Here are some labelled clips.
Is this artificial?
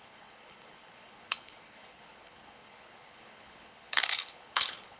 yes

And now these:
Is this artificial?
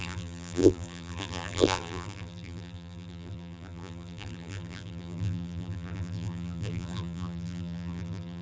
yes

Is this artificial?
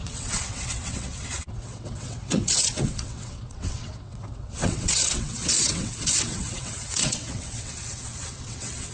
yes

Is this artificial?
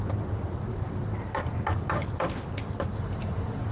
yes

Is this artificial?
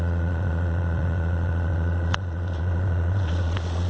yes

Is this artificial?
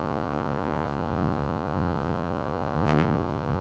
yes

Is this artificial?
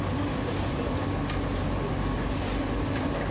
no